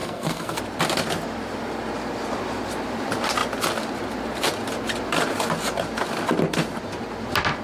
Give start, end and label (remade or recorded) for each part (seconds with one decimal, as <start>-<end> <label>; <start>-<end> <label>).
0.0-0.6 remade; 0.6-7.6 recorded